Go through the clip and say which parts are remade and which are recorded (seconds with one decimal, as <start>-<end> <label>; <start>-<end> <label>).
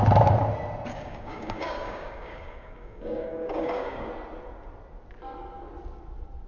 0.0-0.9 recorded; 0.9-4.1 remade; 4.1-6.5 recorded